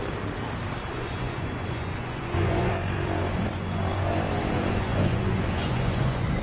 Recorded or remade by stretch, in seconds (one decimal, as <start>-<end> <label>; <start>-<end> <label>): 0.0-0.9 recorded; 0.9-6.4 remade